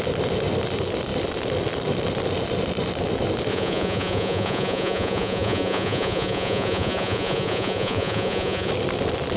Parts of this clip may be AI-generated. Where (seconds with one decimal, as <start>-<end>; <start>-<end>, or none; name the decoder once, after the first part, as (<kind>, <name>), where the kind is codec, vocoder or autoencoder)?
3.5-8.7 (vocoder, Vocos)

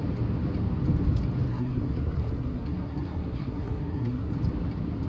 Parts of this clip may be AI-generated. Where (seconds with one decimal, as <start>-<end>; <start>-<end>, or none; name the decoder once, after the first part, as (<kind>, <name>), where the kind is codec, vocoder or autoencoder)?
1.5-4.3 (codec, SNAC)

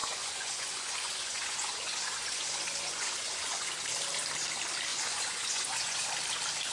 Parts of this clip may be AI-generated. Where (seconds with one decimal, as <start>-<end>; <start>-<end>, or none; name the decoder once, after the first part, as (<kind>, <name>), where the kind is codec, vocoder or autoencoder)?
0.0-3.7 (vocoder, Vocos); 4.9-6.1

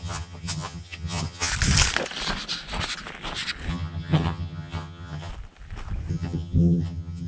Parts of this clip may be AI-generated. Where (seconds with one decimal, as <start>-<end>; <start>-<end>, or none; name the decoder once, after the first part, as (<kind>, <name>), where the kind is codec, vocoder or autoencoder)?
0.0-1.5 (vocoder, HiFi-GAN); 3.7-5.3; 6.1-7.3

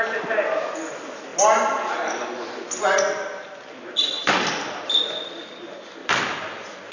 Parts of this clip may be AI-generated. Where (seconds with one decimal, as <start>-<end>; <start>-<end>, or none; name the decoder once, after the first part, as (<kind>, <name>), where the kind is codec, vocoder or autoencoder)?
none

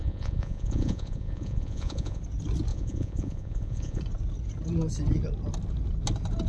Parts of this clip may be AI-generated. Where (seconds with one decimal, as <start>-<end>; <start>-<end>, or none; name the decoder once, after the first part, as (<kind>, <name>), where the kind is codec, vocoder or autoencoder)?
0.0-2.2 (vocoder, Vocos); 2.7-4.0